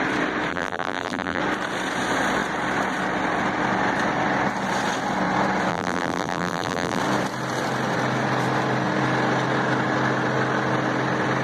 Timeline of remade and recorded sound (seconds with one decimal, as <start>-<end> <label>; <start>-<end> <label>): 0.0-0.5 recorded; 0.5-1.4 remade; 1.4-5.7 recorded; 5.7-7.0 remade; 7.0-11.4 recorded